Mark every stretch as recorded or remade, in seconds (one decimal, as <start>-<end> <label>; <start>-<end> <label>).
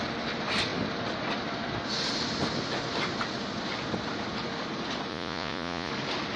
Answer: 0.0-5.1 recorded; 5.1-5.9 remade; 5.9-6.4 recorded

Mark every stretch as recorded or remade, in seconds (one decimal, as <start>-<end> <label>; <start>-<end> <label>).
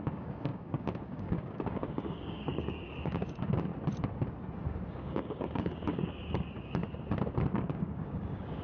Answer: 0.0-3.7 remade; 3.7-4.9 recorded; 4.9-6.8 remade; 6.8-7.5 recorded; 7.5-8.6 remade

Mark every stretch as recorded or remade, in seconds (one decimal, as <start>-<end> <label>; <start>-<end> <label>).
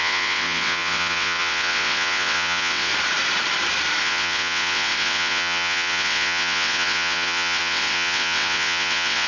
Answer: 0.0-2.9 remade; 2.9-4.0 recorded; 4.0-9.3 remade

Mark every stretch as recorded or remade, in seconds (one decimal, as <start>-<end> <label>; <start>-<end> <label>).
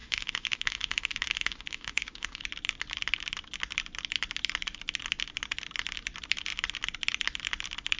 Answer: 0.0-2.4 remade; 2.4-8.0 recorded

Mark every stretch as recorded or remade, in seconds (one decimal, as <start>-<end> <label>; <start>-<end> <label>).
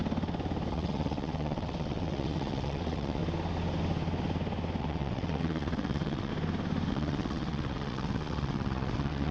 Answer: 0.0-0.7 recorded; 0.7-3.2 remade; 3.2-4.8 recorded; 4.8-6.3 remade; 6.3-6.9 recorded; 6.9-9.3 remade